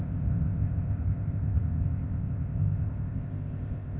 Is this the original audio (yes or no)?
no